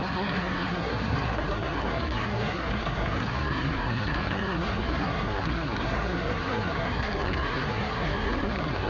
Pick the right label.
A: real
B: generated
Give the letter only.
B